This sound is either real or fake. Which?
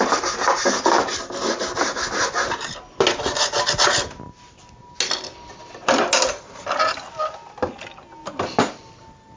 real